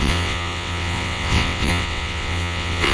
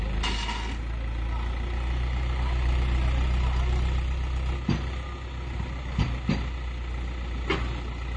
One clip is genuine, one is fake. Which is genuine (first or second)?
second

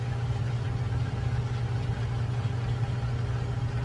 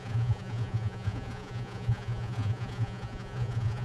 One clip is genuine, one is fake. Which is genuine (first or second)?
first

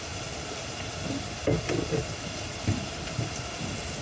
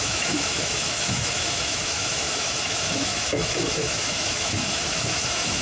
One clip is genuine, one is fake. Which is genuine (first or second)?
first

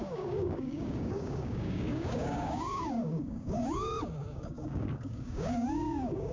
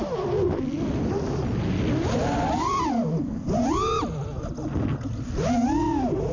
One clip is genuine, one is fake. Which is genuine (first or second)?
second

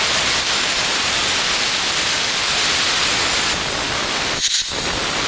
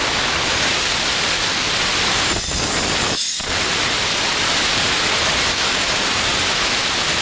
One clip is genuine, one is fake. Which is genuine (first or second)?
first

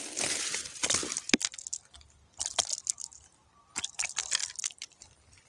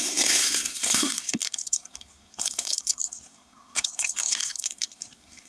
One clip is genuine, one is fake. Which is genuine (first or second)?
first